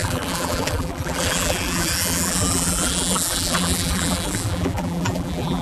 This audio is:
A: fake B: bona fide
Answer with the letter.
A